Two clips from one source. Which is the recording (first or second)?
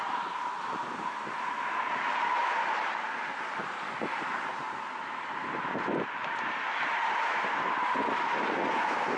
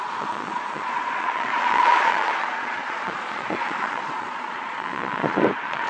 first